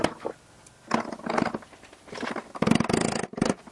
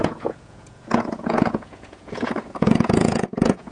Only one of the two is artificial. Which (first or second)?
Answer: second